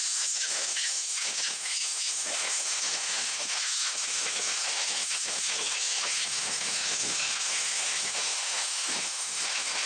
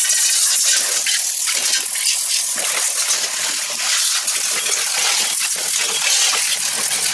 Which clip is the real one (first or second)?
second